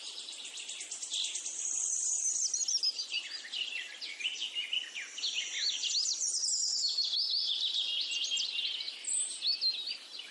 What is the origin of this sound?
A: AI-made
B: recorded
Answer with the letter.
B